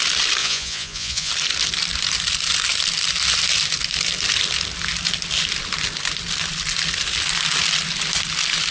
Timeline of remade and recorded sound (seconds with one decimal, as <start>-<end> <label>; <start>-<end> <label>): 0.0-0.4 recorded; 0.4-1.3 remade; 1.3-8.7 recorded